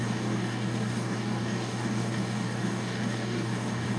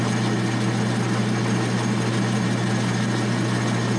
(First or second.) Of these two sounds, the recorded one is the second